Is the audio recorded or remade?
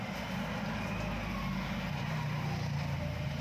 recorded